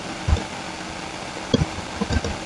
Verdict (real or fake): real